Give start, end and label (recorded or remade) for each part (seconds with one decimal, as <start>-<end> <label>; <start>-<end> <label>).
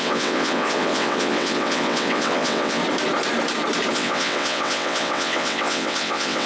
0.0-2.8 remade; 2.8-3.9 recorded; 3.9-6.5 remade